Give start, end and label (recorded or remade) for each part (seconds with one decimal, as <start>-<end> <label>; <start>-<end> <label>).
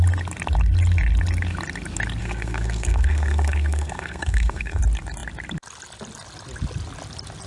0.0-2.2 recorded; 2.2-4.8 remade; 4.8-7.5 recorded